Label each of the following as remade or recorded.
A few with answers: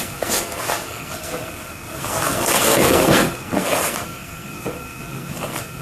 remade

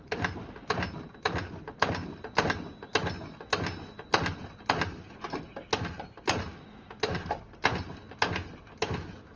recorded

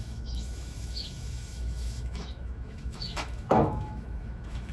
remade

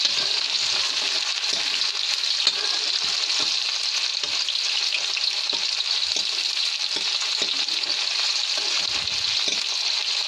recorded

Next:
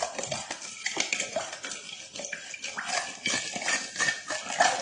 recorded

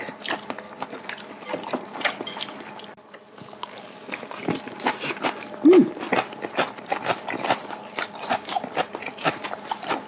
recorded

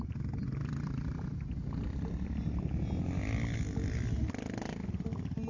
recorded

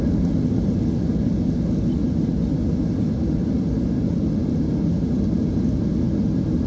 recorded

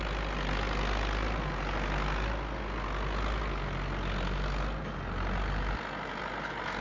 recorded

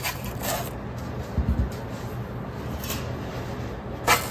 recorded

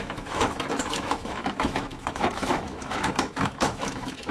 remade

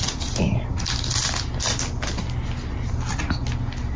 recorded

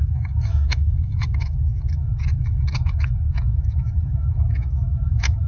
remade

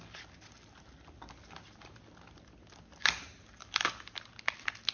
recorded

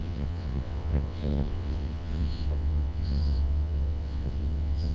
remade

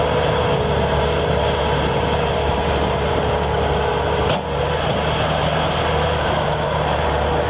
remade